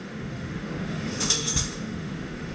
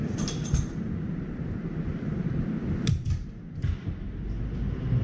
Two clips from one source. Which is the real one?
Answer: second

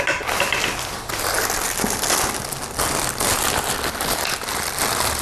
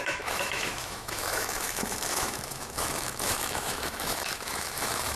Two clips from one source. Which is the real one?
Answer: first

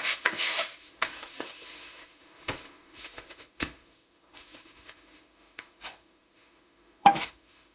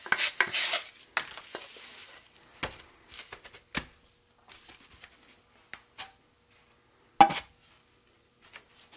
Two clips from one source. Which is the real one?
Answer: second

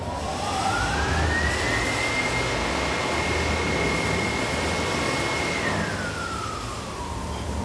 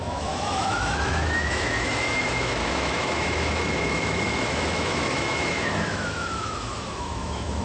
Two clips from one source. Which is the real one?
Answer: first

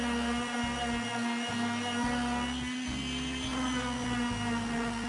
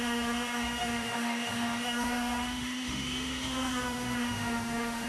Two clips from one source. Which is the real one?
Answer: first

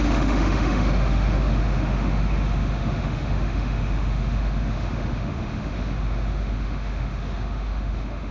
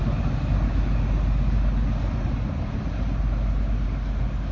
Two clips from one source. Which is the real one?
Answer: second